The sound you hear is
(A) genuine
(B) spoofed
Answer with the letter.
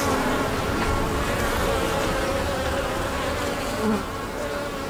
A